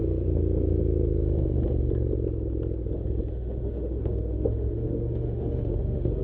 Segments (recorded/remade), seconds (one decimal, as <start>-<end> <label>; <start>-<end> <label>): 0.0-3.3 recorded; 3.3-6.2 remade

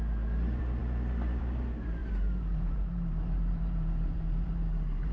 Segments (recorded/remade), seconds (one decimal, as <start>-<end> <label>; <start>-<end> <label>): 0.0-2.0 recorded; 2.0-5.1 remade

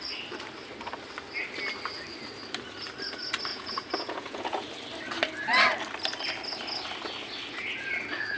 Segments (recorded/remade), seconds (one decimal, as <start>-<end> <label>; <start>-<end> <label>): 0.0-3.5 recorded; 3.5-4.7 remade; 4.7-8.4 recorded

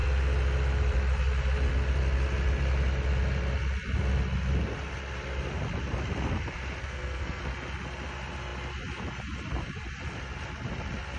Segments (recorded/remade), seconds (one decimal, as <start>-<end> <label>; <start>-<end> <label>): 0.0-6.8 recorded; 6.8-7.4 remade; 7.4-11.2 recorded

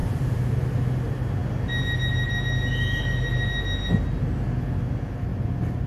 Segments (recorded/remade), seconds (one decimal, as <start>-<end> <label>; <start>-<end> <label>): 0.0-0.5 remade; 0.5-5.3 recorded; 5.3-5.9 remade

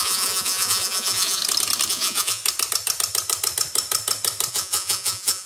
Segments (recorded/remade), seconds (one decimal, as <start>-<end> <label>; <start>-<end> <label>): 0.0-1.4 remade; 1.4-1.9 recorded; 1.9-2.4 remade; 2.4-4.5 recorded; 4.5-5.5 remade

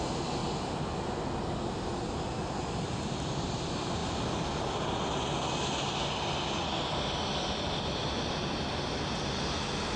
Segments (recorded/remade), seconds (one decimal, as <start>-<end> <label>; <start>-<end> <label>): 0.0-10.0 recorded